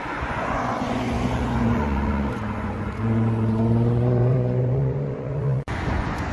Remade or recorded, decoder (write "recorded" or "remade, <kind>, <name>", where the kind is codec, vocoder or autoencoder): remade, vocoder, Vocos